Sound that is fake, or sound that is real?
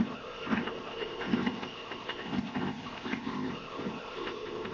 fake